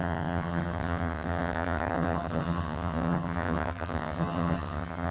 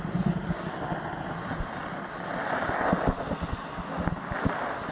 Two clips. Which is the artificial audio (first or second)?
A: first